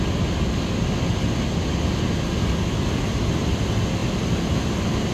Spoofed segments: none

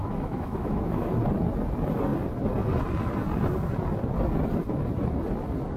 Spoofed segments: 0.0-1.2 (autoencoder, DAC-VAE)

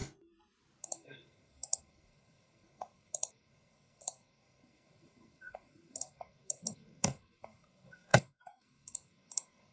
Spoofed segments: 0.8-9.7 (codec, SNAC)

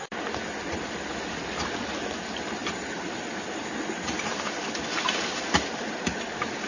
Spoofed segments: none

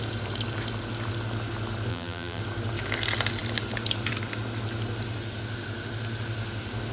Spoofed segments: 1.9-2.4 (vocoder, BigVGAN v2)

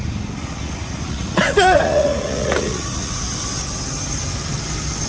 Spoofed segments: 0.4-3.2 (vocoder, Vocos)

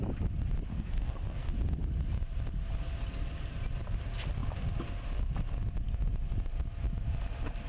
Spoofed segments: 0.7-1.5 (codec, SNAC)